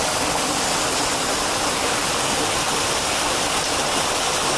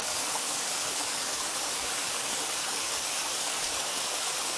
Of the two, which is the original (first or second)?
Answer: first